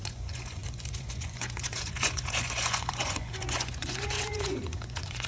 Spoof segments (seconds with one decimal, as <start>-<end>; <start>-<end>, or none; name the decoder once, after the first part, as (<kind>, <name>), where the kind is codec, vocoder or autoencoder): 0.0-5.3 (vocoder, Vocos)